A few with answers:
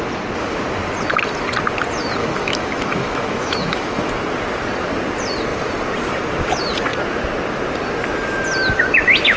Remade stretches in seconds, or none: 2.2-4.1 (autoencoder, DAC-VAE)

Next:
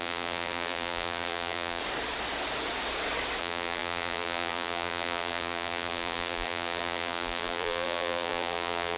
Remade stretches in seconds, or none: 0.0-1.8 (vocoder, BigVGAN v2); 3.4-9.0

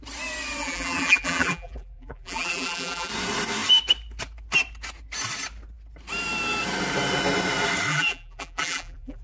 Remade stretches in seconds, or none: 0.6-3.1 (vocoder, BigVGAN v2); 7.9-9.2

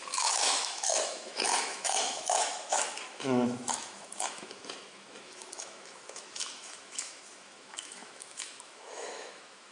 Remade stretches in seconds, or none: 0.0-9.7 (autoencoder, DAC-VAE)

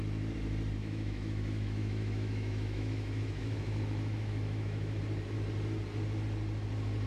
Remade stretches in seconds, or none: 0.8-5.0 (autoencoder, DAC-VAE)